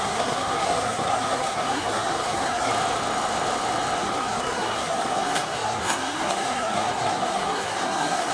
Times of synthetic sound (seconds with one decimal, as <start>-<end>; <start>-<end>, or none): 0.0-2.7; 4.0-8.3